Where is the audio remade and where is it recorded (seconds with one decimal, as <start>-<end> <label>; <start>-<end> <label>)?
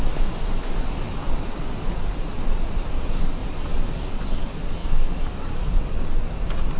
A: 0.0-6.8 recorded